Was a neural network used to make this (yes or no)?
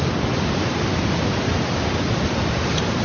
no